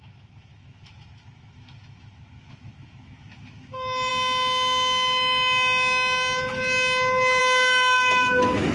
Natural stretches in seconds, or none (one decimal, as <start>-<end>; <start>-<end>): 4.1-7.4